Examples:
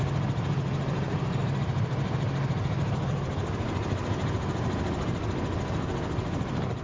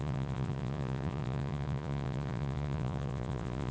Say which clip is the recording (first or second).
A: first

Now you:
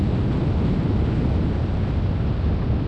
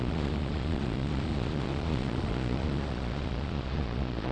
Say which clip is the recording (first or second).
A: first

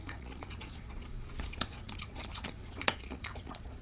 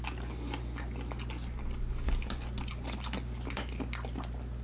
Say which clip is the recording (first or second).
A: second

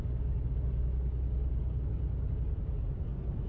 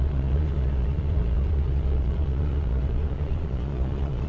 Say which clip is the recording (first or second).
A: first